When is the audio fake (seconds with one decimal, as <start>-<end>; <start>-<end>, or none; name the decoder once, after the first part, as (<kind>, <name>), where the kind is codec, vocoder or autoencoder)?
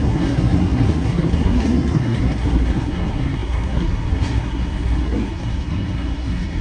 0.0-6.6 (codec, SNAC)